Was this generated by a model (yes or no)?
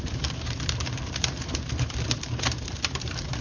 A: yes